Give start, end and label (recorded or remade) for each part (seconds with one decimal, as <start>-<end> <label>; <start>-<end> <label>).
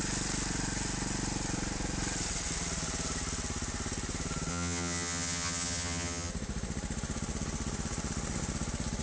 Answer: 0.0-4.5 recorded; 4.5-6.3 remade; 6.3-9.0 recorded